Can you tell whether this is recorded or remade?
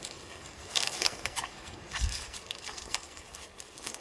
remade